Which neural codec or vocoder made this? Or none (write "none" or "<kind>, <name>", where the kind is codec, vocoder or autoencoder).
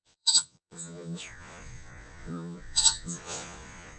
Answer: vocoder, Vocos